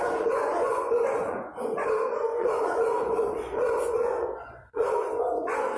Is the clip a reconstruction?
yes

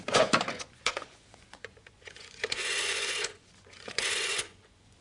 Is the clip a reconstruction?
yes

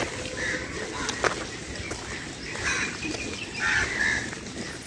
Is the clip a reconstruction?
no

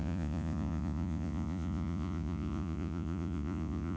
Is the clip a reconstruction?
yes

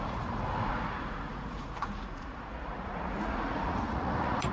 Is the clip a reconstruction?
yes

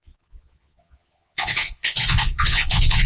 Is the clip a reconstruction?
yes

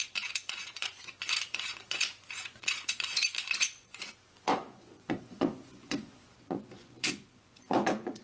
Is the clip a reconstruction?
yes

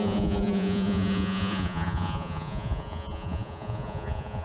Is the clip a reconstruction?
yes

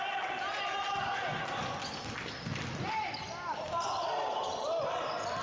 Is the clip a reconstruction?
no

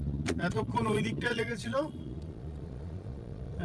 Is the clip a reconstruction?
yes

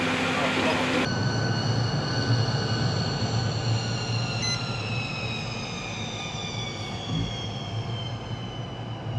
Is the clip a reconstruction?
no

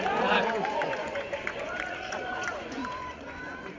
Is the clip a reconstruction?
yes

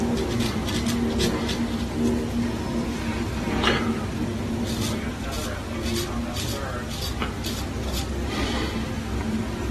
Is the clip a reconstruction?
no